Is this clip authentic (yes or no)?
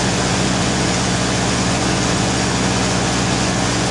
no